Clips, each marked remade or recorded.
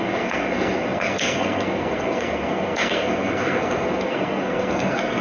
remade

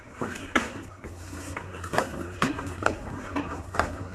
remade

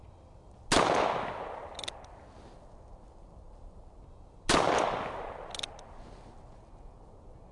recorded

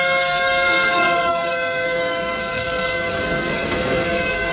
remade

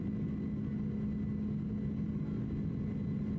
recorded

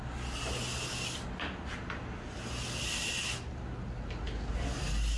recorded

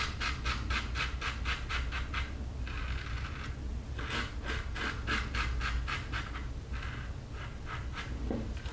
recorded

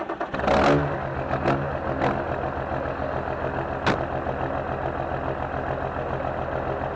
recorded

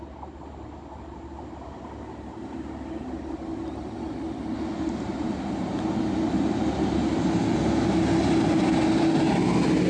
recorded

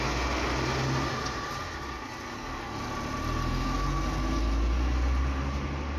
recorded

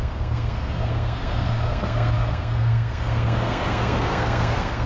remade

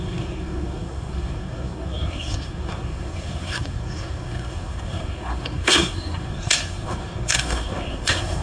remade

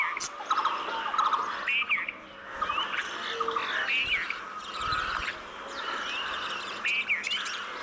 recorded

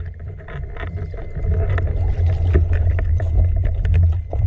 recorded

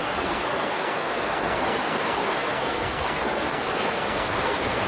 remade